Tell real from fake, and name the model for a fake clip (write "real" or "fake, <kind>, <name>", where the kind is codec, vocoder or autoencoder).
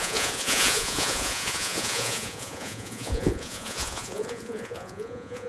fake, vocoder, Vocos